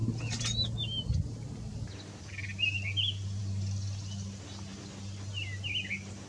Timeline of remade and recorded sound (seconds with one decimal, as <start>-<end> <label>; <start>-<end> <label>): 0.0-6.3 recorded